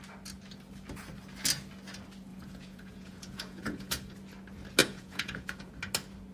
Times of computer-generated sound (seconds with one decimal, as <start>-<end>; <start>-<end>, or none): 2.3-3.9; 4.8-5.7